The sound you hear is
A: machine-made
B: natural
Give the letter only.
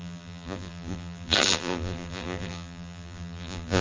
A